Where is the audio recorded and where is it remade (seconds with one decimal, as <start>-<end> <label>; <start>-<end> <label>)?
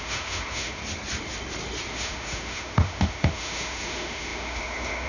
0.0-0.8 remade; 0.8-1.9 recorded; 1.9-5.1 remade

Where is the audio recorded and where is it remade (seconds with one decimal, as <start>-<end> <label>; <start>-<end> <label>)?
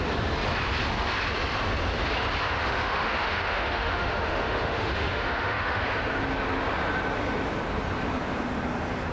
0.0-2.6 recorded; 2.6-5.8 remade; 5.8-9.1 recorded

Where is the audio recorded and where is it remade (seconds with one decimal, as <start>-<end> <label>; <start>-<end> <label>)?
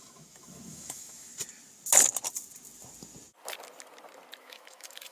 0.0-1.3 remade; 1.3-4.4 recorded; 4.4-5.1 remade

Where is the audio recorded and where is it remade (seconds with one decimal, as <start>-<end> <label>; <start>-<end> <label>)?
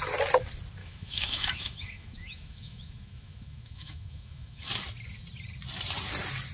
0.0-0.8 recorded; 0.8-4.7 remade; 4.7-6.5 recorded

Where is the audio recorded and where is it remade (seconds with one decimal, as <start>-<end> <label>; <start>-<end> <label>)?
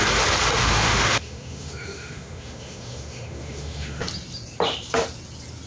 0.0-0.6 recorded; 0.6-4.0 remade; 4.0-5.7 recorded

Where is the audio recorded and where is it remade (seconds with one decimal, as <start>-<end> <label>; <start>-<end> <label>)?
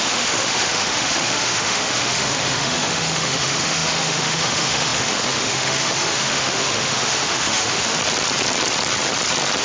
0.0-8.0 remade; 8.0-9.6 recorded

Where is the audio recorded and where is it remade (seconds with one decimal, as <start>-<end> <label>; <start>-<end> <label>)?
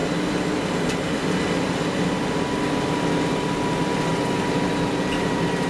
0.0-5.7 recorded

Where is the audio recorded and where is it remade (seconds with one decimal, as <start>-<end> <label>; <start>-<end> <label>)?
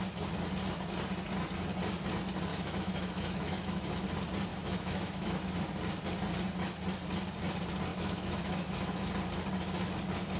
0.0-2.5 recorded; 2.5-4.0 remade; 4.0-4.5 recorded; 4.5-5.5 remade; 5.5-7.9 recorded; 7.9-9.1 remade; 9.1-10.4 recorded